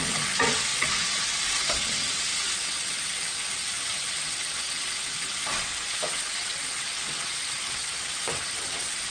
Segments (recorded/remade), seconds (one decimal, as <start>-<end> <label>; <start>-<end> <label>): 0.0-9.1 remade